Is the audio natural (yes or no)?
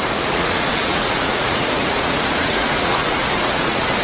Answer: no